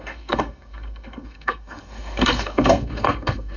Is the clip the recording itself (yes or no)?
no